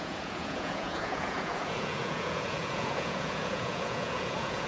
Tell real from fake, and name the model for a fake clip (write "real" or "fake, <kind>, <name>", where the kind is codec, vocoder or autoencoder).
fake, vocoder, Vocos